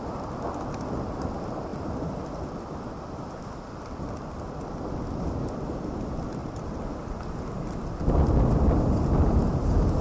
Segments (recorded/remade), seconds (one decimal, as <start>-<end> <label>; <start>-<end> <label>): 0.0-1.7 recorded; 1.7-4.8 remade; 4.8-6.4 recorded; 6.4-8.0 remade; 8.0-10.0 recorded